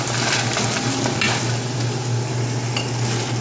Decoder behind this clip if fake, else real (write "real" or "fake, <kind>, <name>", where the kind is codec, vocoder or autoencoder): real